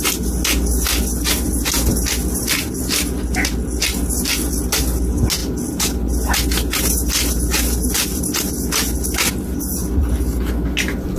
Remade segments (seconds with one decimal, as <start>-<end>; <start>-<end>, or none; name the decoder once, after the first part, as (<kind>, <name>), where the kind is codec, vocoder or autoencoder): none